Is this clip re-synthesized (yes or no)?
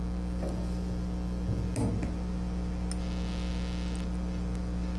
no